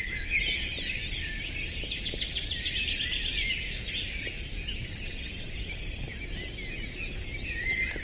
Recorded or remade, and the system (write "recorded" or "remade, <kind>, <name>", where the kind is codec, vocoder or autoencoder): recorded